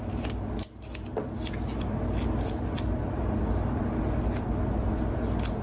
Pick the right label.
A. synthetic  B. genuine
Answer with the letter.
B